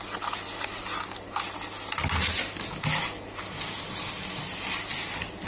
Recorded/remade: recorded